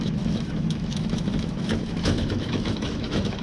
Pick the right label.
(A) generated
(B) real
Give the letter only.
A